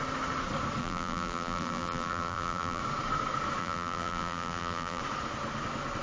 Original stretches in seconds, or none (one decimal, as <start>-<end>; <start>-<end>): 0.0-0.8; 2.8-3.6; 5.0-6.0